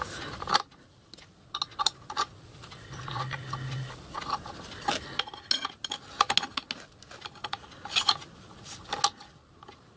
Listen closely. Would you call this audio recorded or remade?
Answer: recorded